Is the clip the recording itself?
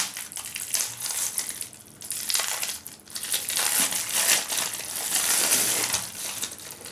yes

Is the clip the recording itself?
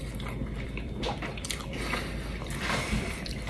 no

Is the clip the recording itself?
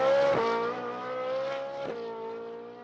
yes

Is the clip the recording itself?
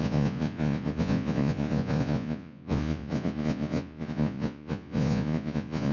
no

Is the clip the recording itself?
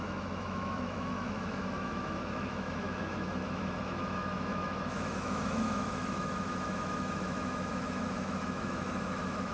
no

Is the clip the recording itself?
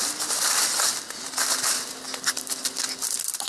yes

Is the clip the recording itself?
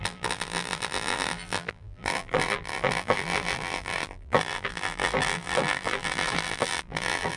no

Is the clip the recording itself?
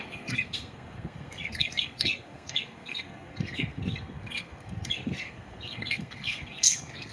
no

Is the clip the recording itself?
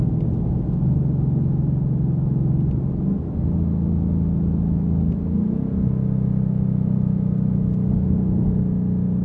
yes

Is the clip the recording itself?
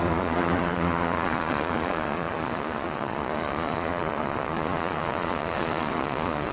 no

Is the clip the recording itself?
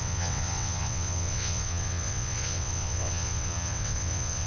no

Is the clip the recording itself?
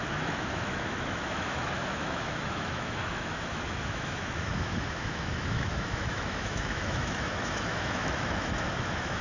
no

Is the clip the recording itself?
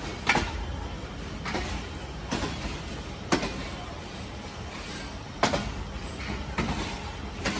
yes